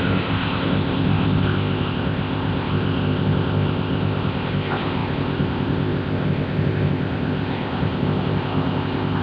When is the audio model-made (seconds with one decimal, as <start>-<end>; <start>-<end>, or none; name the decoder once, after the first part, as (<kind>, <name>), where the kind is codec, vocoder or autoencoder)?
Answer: 0.0-9.2 (codec, ZipCodec)